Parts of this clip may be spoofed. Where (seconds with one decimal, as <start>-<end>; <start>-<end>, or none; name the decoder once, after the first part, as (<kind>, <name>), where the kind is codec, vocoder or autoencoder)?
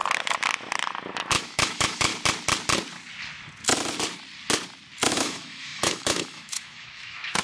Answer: 1.3-2.1 (autoencoder, DAC-VAE); 5.1-7.4